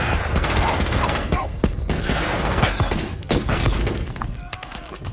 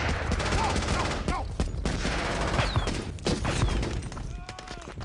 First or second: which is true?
second